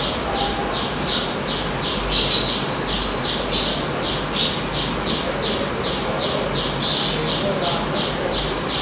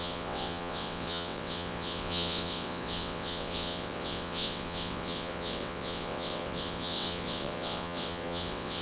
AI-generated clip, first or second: second